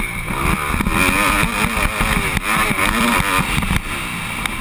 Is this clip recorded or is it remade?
recorded